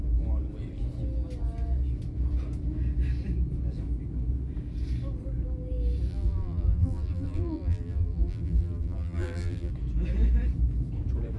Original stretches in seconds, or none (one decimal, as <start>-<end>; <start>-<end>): 0.0-6.1; 9.7-11.4